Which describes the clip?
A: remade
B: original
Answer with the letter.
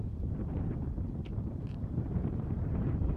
A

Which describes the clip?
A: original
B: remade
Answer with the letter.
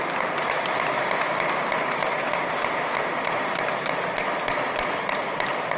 B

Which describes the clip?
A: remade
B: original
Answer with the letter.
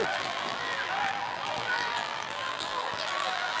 A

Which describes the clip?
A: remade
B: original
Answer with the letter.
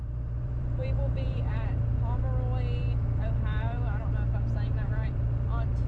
A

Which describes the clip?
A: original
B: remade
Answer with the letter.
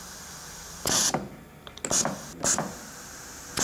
A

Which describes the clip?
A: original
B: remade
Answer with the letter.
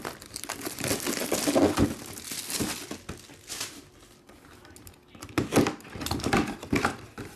A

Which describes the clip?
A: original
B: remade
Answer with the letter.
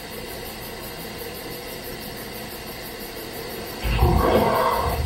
A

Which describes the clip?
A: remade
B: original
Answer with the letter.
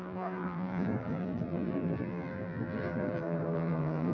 A